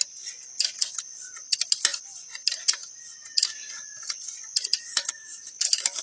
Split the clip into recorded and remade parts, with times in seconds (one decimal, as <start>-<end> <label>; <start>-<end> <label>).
0.0-4.9 recorded; 4.9-6.0 remade